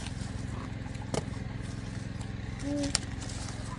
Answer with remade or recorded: recorded